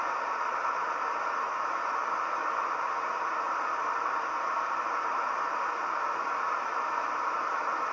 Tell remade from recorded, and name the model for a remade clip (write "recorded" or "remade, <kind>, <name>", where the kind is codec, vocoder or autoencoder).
remade, vocoder, BigVGAN v2